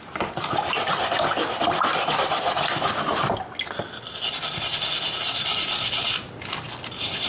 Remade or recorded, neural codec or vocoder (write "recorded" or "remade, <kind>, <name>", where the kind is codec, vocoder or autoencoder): recorded